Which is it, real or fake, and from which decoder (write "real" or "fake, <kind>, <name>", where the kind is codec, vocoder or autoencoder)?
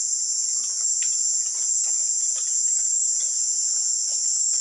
fake, vocoder, Vocos